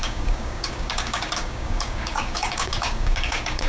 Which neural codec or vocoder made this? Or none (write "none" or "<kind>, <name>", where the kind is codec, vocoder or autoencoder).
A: codec, DAC